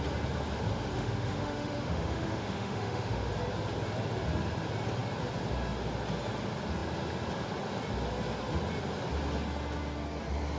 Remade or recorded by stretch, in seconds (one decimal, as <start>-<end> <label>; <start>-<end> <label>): 0.0-0.9 recorded; 0.9-3.3 remade; 3.3-10.6 recorded